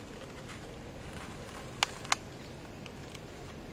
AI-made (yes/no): no